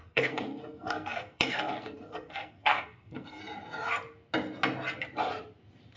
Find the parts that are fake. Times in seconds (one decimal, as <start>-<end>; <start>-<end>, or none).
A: 0.0-3.4